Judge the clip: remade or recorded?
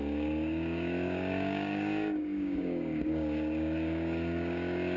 remade